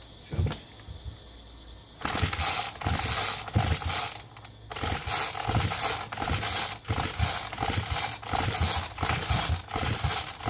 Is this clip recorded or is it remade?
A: recorded